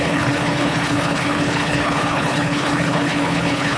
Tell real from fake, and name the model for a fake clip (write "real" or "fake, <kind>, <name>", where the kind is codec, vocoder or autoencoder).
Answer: fake, codec, HILCodec